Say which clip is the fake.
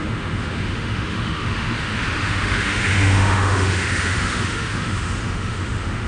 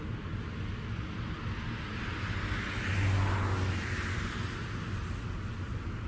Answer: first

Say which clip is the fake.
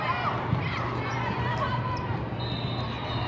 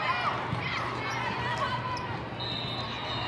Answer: first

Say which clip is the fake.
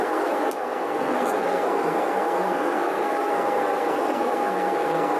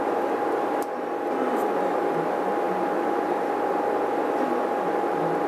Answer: first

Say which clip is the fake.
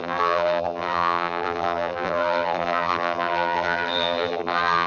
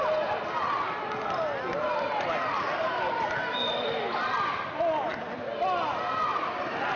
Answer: first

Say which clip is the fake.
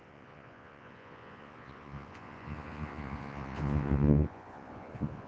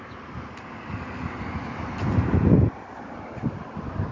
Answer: first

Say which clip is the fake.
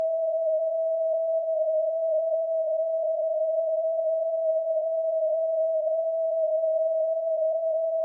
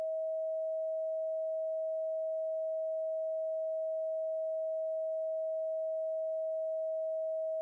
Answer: first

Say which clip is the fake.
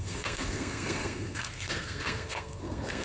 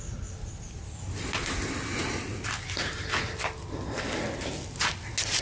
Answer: first